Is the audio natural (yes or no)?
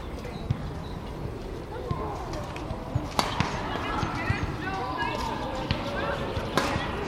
yes